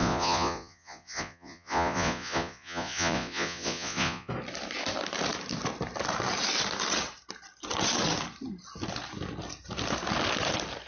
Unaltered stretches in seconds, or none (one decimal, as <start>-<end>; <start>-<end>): 4.3-10.9